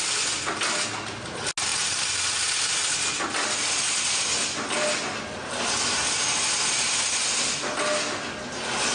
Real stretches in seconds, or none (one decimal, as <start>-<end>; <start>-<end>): 0.0-8.9